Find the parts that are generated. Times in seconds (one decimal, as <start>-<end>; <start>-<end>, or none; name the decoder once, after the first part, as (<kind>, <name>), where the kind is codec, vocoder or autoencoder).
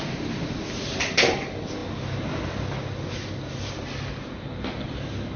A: none